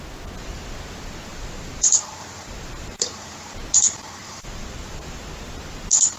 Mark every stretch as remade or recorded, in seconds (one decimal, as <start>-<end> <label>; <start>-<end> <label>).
0.0-1.3 recorded; 1.3-3.5 remade; 3.5-4.2 recorded; 4.2-5.2 remade; 5.2-6.2 recorded